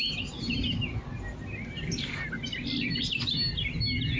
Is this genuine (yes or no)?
yes